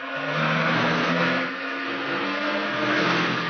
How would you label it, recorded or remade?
remade